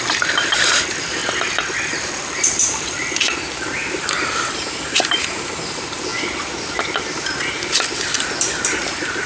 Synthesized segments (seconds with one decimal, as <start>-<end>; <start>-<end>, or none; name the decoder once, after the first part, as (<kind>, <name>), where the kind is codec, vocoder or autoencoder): 0.0-1.2 (vocoder, BigVGAN v2); 1.9-3.8; 4.9-6.1; 8.7-9.3